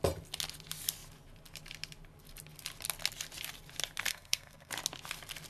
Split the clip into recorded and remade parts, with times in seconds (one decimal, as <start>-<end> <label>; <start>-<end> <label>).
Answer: 0.0-4.1 recorded; 4.1-4.7 remade; 4.7-5.5 recorded